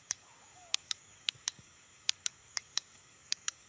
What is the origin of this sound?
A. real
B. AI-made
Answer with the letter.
B